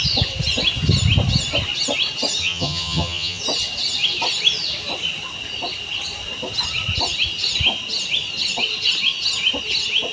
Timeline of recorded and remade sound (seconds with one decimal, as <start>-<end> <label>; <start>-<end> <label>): 0.0-2.4 recorded; 2.4-3.4 remade; 3.4-10.1 recorded